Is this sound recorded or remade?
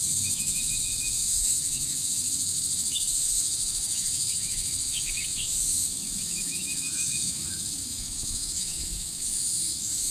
remade